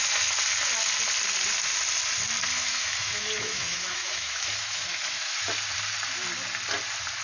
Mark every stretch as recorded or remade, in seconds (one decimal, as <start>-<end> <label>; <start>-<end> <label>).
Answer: 0.0-2.5 recorded; 2.5-5.5 remade; 5.5-7.2 recorded